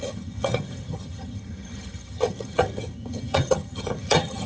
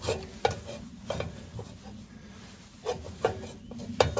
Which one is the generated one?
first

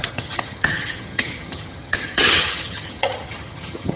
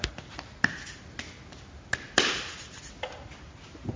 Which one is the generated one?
first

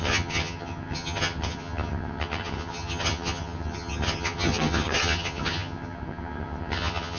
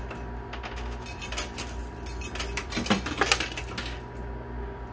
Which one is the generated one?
first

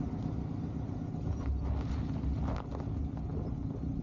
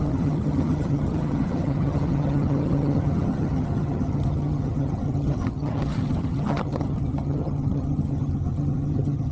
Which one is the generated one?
second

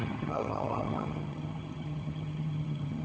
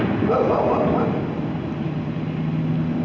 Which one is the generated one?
first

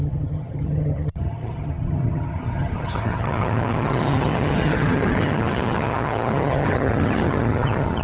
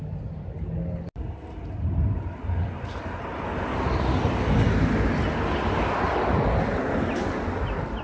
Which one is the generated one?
first